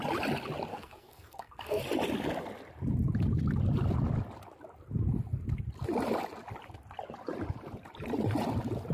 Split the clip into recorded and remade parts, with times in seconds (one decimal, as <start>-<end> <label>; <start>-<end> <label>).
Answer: 0.0-0.7 recorded; 0.7-1.8 remade; 1.8-8.9 recorded